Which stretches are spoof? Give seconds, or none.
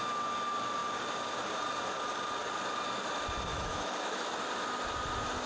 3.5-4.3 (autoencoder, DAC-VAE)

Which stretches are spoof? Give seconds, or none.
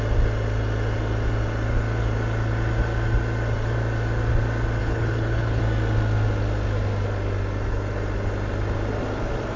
4.8-5.6 (codec, HILCodec)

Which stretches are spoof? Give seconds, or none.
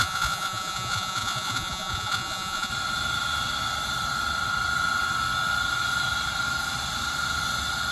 0.0-2.7 (vocoder, Vocos)